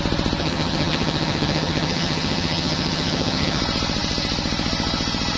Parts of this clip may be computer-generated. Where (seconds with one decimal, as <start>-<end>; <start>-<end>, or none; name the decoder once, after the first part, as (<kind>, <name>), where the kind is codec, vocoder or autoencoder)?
0.4-3.6 (vocoder, HiFi-GAN)